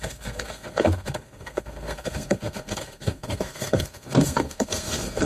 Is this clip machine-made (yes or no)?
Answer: yes